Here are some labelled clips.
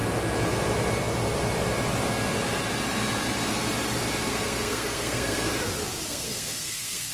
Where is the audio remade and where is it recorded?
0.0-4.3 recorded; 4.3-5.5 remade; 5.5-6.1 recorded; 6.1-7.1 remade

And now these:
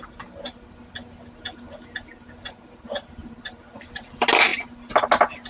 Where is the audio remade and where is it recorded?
0.0-5.5 recorded

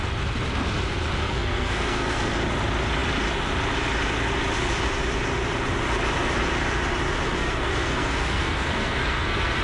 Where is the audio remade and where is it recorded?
0.0-1.2 recorded; 1.2-2.3 remade; 2.3-7.4 recorded; 7.4-9.6 remade

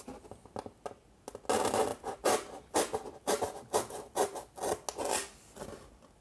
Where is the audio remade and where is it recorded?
0.0-6.2 recorded

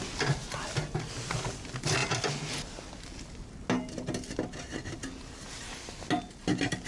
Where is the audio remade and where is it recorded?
0.0-6.9 recorded

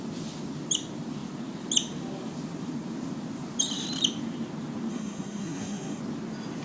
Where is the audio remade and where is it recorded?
0.0-4.9 recorded; 4.9-6.0 remade; 6.0-6.6 recorded

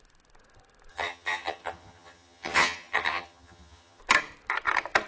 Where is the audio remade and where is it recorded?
0.0-0.9 recorded; 0.9-4.0 remade; 4.0-5.1 recorded

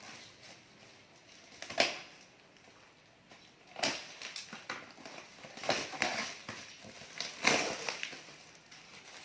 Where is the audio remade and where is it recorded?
0.0-9.2 recorded